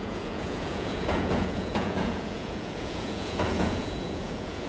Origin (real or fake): fake